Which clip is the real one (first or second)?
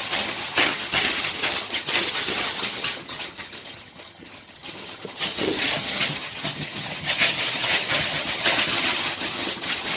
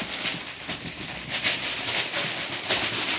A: second